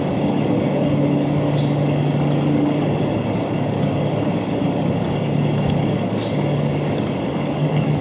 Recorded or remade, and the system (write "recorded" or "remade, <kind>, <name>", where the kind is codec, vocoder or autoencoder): remade, codec, DAC